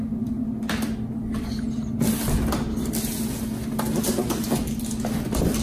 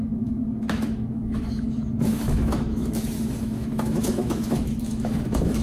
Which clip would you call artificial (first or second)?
second